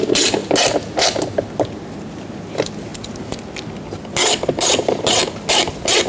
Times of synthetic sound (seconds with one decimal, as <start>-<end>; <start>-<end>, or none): none